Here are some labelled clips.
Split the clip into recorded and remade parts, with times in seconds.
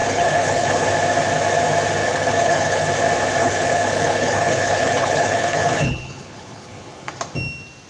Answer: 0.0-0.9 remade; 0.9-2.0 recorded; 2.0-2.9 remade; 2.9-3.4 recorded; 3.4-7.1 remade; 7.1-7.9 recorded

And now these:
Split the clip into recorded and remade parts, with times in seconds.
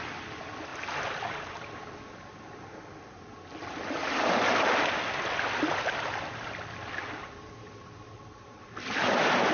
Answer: 0.0-9.5 recorded